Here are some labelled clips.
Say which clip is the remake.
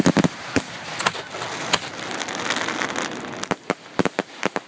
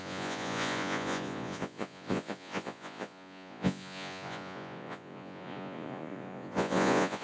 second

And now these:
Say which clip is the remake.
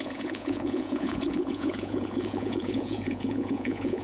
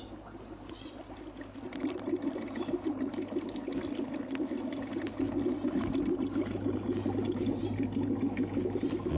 first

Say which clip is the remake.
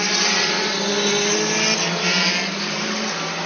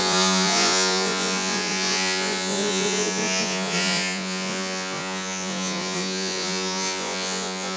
second